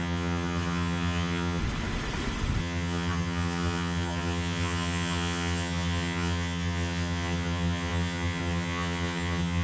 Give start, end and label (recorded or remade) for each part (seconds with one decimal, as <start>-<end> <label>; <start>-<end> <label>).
0.0-1.6 remade; 1.6-2.6 recorded; 2.6-9.6 remade